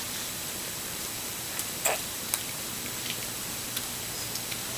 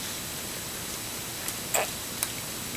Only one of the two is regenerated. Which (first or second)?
first